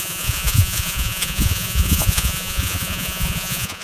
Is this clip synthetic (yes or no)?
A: yes